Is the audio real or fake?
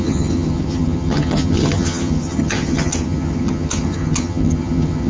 fake